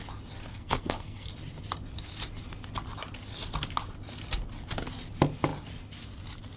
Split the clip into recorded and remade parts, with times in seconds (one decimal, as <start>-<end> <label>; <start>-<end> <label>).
0.0-0.5 recorded; 0.5-1.3 remade; 1.3-6.6 recorded